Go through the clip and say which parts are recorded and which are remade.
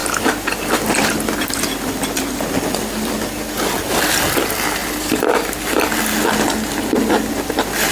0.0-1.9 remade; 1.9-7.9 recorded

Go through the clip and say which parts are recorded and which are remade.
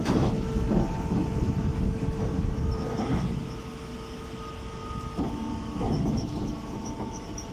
0.0-7.5 remade